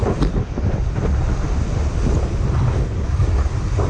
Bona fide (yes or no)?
yes